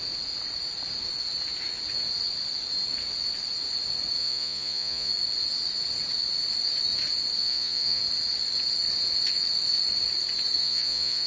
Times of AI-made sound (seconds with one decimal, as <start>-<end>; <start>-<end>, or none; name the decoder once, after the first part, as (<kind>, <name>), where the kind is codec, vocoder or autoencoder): 4.2-5.1 (vocoder, Vocos); 7.4-8.0; 10.6-11.3